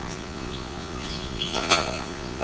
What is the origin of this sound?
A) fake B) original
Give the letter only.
A